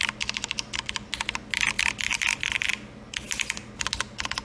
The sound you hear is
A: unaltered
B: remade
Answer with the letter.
A